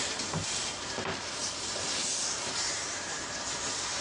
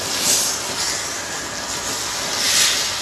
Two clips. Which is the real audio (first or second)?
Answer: second